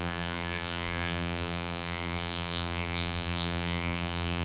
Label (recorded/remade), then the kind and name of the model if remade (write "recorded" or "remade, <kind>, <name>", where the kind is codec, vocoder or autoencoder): remade, vocoder, BigVGAN v2